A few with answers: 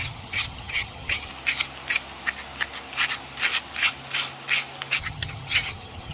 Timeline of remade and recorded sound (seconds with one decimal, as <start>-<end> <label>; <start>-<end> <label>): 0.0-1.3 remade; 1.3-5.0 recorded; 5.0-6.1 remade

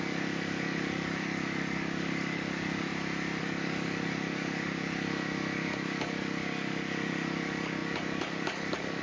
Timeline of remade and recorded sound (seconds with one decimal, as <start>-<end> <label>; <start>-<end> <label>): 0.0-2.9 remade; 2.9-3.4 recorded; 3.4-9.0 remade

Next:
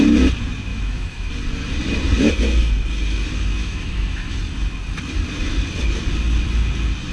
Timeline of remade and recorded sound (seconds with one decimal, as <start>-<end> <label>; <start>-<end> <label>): 0.0-0.7 recorded; 0.7-1.3 remade; 1.3-3.6 recorded; 3.6-4.4 remade; 4.4-7.1 recorded